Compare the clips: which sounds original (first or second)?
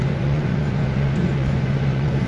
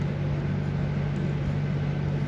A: second